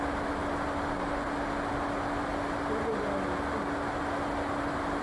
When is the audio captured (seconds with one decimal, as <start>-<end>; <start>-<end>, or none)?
0.0-5.0